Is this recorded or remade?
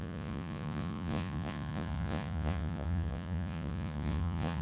remade